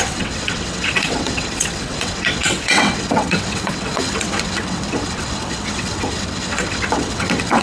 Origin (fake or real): fake